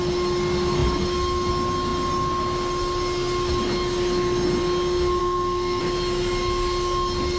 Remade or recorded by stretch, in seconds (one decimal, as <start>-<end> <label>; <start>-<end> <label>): 0.0-5.2 recorded; 5.2-5.8 remade; 5.8-7.4 recorded